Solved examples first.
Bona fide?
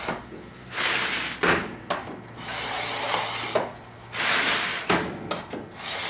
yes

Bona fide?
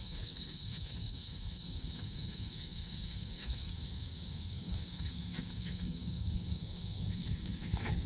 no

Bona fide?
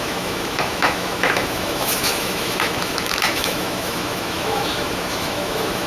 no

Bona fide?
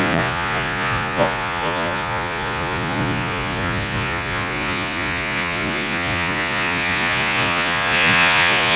no